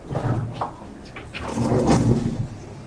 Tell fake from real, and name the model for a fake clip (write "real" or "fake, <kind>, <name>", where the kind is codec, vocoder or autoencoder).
real